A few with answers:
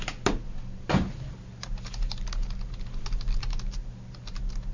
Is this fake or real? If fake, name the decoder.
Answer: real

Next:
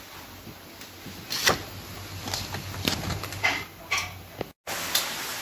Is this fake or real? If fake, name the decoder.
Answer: real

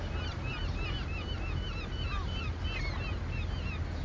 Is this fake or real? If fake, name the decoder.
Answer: real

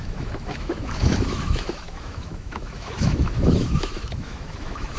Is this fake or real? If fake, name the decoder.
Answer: fake, autoencoder, DAC-VAE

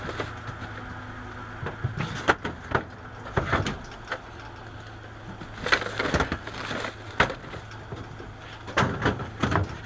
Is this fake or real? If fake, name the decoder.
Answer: real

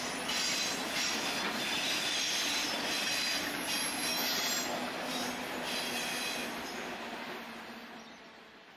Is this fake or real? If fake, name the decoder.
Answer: real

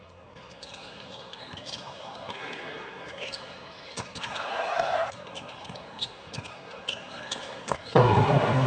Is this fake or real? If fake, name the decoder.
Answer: fake, codec, SNAC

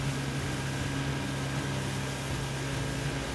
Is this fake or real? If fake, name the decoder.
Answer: real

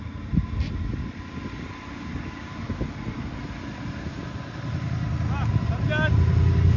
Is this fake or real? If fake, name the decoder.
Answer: real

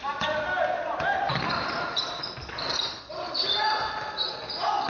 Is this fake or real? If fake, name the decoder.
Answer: real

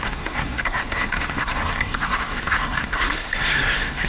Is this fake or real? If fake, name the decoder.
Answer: fake, codec, SNAC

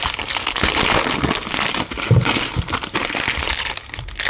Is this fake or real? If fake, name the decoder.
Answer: real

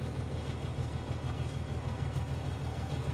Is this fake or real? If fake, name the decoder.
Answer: fake, codec, SNAC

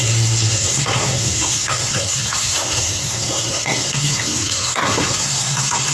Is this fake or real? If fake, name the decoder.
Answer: fake, codec, SNAC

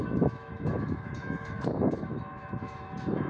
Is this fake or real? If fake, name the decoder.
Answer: fake, autoencoder, DAC-VAE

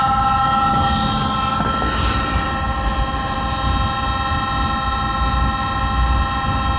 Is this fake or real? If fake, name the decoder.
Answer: real